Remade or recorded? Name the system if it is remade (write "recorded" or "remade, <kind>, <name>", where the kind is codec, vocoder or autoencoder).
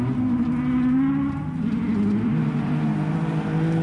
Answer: recorded